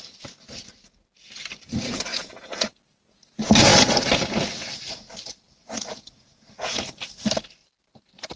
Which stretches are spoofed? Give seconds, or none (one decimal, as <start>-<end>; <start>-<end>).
2.1-2.7; 5.6-6.9